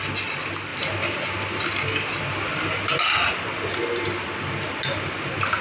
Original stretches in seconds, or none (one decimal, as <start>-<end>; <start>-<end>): 0.0-0.7; 3.3-5.6